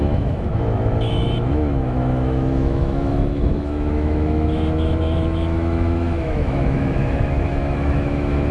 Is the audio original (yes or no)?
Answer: no